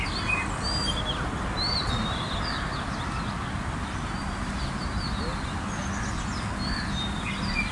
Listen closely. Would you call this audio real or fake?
real